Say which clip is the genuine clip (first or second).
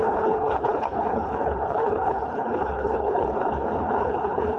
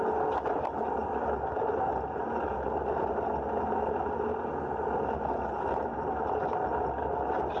second